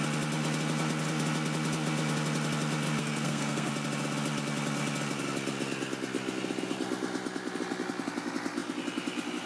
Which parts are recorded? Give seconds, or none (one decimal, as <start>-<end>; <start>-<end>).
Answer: 0.0-3.0; 3.7-9.5